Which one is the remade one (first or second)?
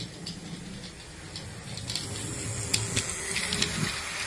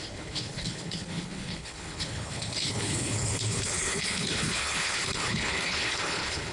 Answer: second